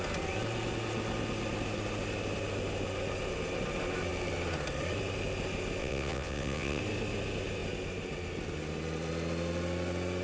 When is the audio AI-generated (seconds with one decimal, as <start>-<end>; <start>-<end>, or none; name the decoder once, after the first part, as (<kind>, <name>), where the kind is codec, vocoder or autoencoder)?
5.8-6.8 (vocoder, WaveNeXt)